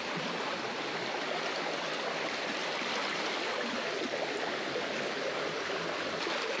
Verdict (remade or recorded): recorded